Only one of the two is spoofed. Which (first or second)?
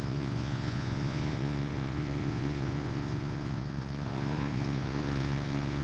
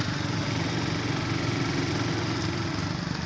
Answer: first